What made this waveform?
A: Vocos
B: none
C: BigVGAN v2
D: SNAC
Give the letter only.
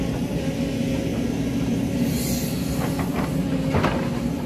B